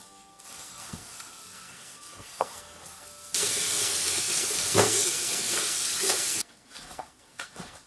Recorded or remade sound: remade